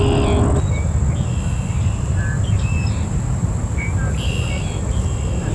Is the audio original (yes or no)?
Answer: yes